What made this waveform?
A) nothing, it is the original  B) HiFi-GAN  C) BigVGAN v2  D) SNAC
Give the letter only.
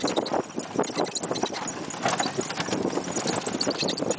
A